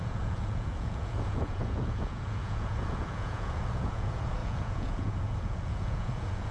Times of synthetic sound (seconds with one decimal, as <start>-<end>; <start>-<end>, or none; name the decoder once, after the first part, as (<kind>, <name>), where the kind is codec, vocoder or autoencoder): 0.0-6.5 (vocoder, Vocos)